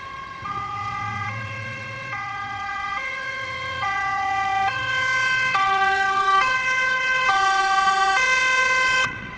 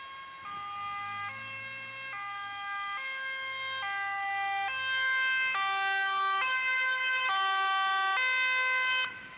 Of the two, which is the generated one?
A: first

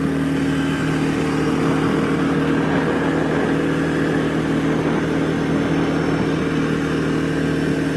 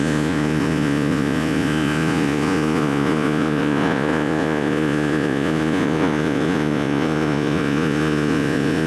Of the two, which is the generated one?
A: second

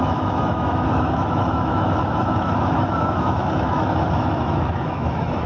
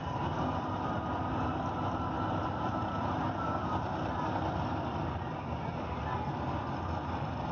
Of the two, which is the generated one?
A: first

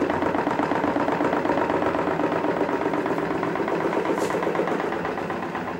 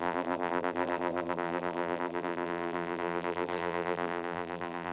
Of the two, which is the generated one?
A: second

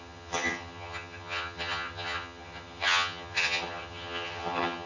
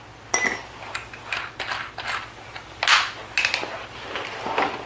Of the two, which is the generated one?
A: first